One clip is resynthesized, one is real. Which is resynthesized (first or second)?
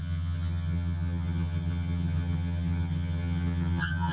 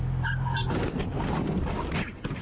first